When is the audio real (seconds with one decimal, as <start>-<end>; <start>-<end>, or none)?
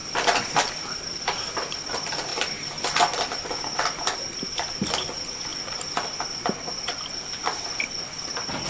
1.4-8.7